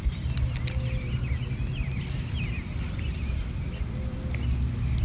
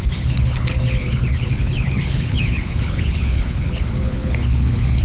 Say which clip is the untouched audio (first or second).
first